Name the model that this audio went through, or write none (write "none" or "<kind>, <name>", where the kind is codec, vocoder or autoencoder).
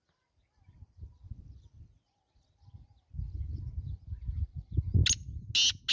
none